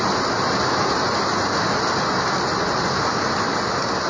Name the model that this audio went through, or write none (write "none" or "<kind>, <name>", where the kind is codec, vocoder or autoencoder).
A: none